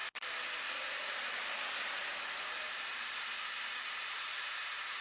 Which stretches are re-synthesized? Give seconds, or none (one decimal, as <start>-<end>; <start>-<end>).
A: none